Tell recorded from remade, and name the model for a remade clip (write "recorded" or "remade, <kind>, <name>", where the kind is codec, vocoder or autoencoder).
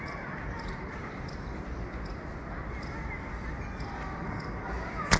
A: recorded